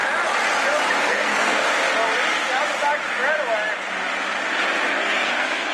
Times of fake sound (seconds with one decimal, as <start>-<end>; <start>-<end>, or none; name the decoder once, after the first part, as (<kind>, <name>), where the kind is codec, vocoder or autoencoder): 1.0-1.6 (codec, SNAC); 5.0-5.7

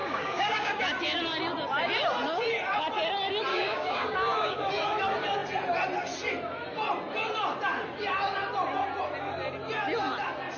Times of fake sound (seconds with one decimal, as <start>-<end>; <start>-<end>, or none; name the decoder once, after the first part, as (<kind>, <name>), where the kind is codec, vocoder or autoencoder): 0.0-0.8 (codec, DAC); 3.5-4.7

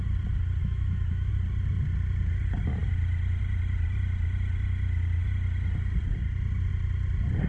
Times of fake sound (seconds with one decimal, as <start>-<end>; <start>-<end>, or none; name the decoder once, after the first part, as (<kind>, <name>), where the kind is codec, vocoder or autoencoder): 0.6-1.3 (autoencoder, DAC-VAE)

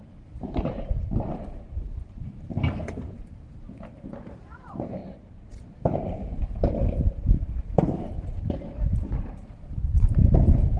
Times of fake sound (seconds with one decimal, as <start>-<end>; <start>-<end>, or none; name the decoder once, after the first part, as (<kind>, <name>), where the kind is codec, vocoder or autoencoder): 0.0-10.8 (vocoder, BigVGAN v2)

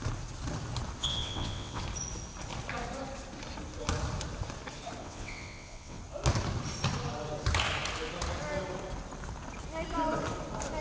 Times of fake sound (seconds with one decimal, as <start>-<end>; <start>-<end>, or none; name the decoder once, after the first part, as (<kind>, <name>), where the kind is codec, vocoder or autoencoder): 1.0-1.8 (vocoder, WaveNeXt); 5.0-6.0